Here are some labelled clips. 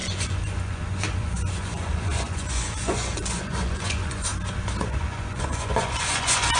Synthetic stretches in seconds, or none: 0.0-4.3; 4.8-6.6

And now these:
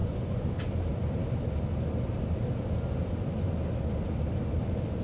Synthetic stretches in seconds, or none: 0.0-0.6